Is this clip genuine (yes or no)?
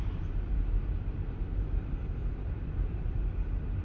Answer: no